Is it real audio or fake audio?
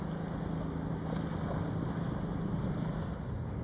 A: real